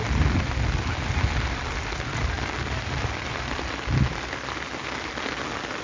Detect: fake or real real